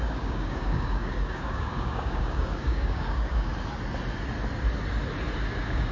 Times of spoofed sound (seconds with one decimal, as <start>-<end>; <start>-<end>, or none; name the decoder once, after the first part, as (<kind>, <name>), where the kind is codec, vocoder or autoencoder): 0.0-3.5 (codec, DAC); 5.5-5.9